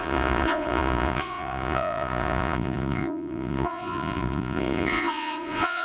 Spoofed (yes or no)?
yes